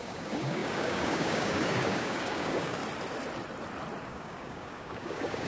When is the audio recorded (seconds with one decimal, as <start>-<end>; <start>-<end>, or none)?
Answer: 2.8-4.0